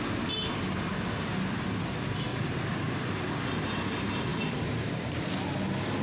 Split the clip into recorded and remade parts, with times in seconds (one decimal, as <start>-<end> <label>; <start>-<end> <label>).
0.0-2.3 recorded; 2.3-2.9 remade; 2.9-4.3 recorded; 4.3-5.3 remade; 5.3-6.0 recorded